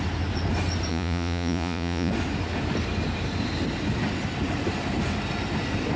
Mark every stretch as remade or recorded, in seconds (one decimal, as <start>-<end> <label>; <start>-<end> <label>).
0.0-0.9 recorded; 0.9-2.1 remade; 2.1-6.0 recorded